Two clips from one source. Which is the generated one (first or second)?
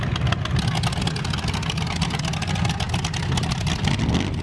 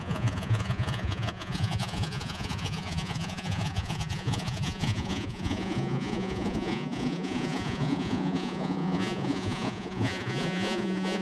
second